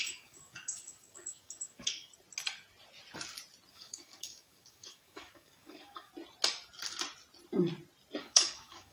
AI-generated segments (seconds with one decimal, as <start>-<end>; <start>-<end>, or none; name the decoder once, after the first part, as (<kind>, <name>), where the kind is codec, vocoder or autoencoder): 0.0-2.1 (codec, DAC); 3.7-6.1; 8.2-8.9